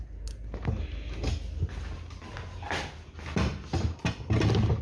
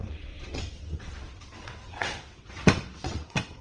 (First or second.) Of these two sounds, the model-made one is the second